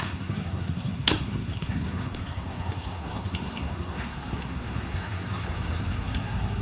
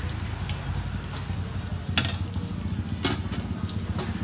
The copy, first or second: first